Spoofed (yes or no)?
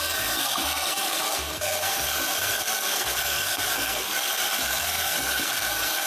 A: yes